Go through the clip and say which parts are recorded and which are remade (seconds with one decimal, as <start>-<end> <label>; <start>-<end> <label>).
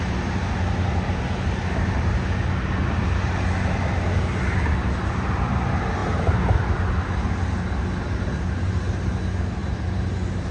0.0-10.5 recorded